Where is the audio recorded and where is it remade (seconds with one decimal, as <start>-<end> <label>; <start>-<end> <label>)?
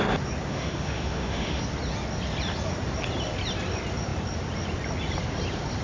0.0-0.5 recorded; 0.5-1.6 remade; 1.6-5.8 recorded